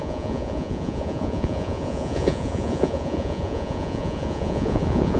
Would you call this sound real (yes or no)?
no